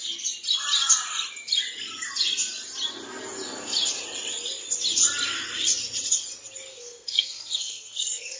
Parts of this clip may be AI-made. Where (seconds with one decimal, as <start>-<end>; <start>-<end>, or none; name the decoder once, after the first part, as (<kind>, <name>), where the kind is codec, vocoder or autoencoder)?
6.7-8.4 (codec, SNAC)